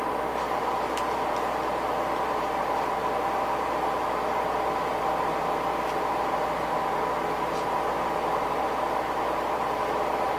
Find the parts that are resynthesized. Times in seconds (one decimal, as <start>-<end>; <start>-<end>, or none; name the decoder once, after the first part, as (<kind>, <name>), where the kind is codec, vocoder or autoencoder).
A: none